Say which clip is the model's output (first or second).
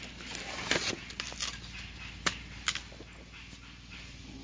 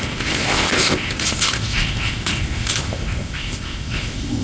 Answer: second